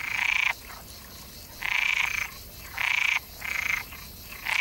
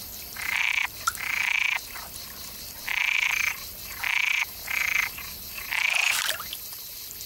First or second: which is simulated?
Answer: second